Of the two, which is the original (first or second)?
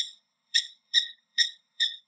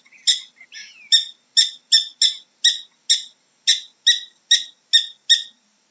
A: second